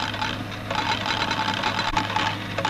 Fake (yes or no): no